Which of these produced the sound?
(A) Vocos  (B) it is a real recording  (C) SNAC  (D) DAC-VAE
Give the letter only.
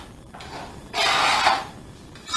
B